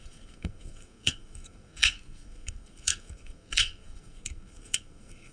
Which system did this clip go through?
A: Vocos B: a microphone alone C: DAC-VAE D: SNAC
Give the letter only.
D